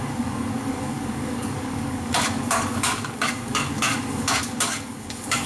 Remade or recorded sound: remade